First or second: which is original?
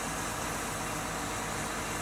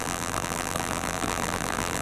first